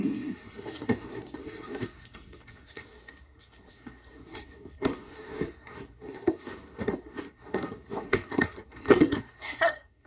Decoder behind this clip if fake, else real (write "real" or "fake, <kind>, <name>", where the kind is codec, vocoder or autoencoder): fake, codec, SNAC